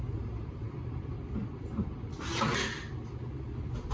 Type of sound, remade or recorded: recorded